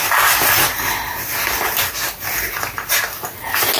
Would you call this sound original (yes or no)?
yes